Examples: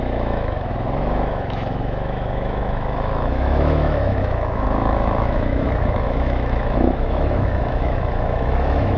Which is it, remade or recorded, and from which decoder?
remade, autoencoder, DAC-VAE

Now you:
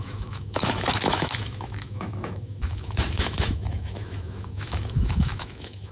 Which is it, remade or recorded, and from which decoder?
remade, autoencoder, DAC-VAE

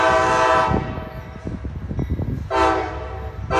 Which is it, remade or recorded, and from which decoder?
recorded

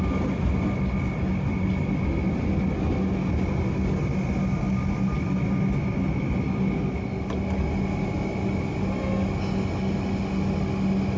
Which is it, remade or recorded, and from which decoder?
recorded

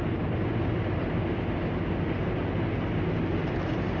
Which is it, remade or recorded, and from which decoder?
recorded